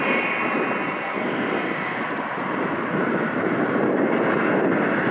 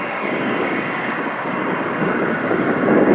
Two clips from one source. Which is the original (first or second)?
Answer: first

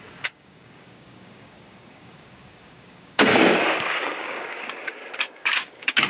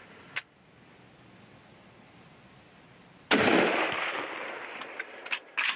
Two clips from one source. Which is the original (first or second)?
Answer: second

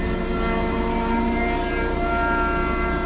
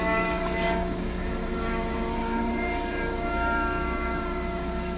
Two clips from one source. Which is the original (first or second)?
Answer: first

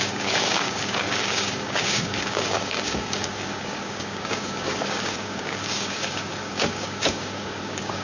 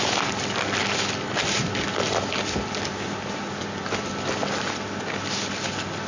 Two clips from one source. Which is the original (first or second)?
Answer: second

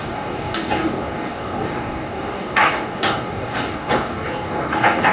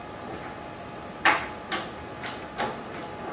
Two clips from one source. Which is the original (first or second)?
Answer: second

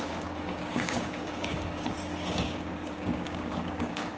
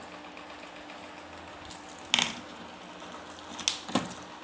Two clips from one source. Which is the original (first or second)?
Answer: second